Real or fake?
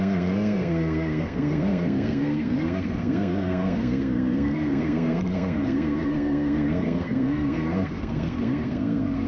fake